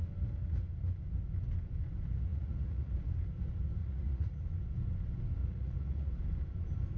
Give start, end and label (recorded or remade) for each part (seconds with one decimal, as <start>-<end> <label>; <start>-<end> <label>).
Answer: 0.0-2.3 recorded; 2.3-2.9 remade; 2.9-3.8 recorded; 3.8-4.4 remade; 4.4-5.4 recorded; 5.4-6.1 remade; 6.1-7.0 recorded